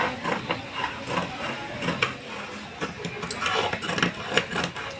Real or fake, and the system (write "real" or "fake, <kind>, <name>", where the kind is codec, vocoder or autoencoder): real